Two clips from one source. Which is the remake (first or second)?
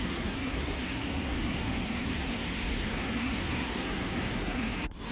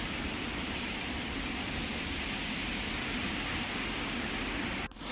first